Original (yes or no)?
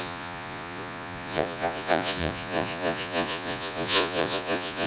no